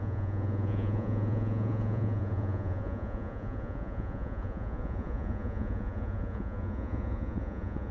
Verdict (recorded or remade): remade